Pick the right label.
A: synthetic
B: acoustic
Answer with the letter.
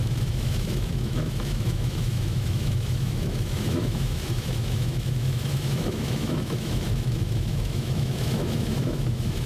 A